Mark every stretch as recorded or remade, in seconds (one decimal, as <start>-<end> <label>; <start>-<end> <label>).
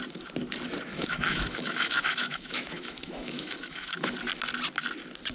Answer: 0.0-0.9 recorded; 0.9-4.1 remade; 4.1-5.3 recorded